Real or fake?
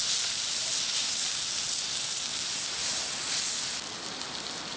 real